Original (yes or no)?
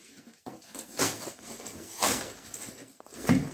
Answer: no